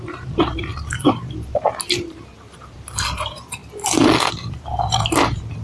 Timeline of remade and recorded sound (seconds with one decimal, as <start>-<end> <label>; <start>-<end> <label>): 0.0-3.6 remade; 3.6-4.3 recorded; 4.3-5.6 remade